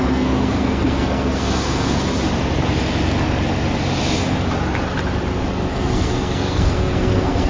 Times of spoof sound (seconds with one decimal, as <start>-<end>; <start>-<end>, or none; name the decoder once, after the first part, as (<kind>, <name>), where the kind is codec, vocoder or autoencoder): 0.0-2.1 (codec, SNAC); 5.7-7.5